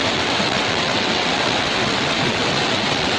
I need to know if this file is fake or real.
fake